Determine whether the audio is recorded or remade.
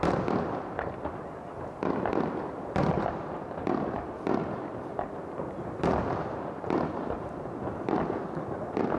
recorded